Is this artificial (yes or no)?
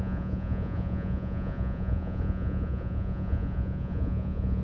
yes